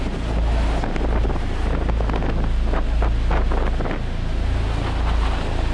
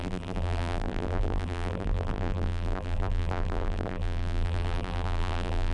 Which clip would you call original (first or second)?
first